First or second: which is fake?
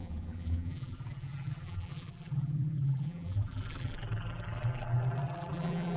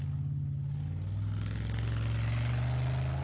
first